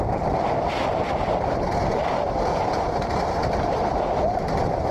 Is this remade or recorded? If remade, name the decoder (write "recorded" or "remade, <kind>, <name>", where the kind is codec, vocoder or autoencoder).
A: recorded